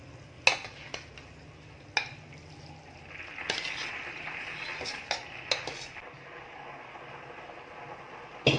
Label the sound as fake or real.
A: real